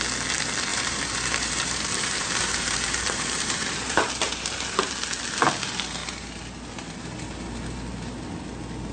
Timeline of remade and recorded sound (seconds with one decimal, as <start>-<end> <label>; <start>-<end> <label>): 0.0-0.7 recorded; 0.7-4.9 remade; 4.9-8.9 recorded